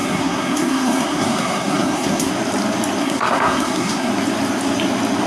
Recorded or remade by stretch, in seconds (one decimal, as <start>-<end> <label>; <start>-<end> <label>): 0.0-2.3 remade; 2.3-3.0 recorded; 3.0-4.1 remade; 4.1-5.3 recorded